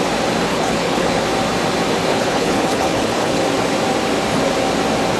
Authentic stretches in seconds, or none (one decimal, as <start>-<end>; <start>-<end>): 0.0-0.5; 1.2-2.1; 3.4-5.2